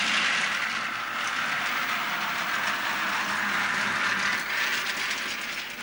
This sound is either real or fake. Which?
real